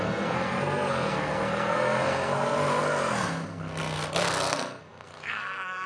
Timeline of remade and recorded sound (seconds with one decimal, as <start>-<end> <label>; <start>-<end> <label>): 0.0-5.9 remade